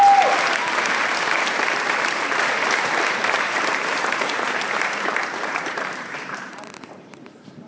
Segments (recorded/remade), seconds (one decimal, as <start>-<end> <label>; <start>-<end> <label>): 0.0-3.0 recorded; 3.0-7.7 remade